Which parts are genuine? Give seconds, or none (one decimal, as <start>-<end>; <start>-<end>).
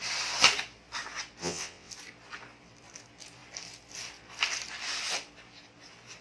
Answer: 0.0-1.4; 1.9-6.2